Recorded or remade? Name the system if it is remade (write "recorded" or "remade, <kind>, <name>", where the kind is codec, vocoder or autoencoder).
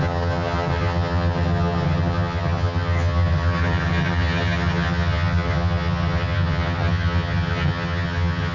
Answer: remade, vocoder, HiFi-GAN